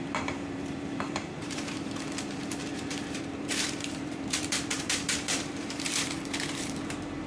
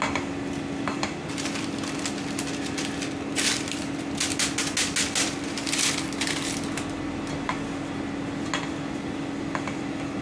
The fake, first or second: first